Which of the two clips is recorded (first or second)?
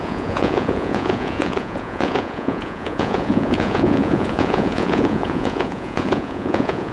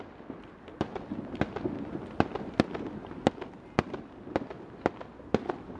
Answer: second